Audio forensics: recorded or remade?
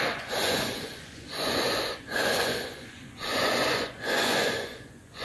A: remade